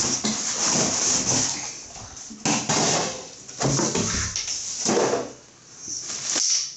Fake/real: real